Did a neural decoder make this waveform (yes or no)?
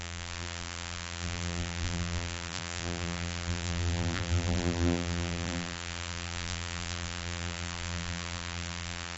yes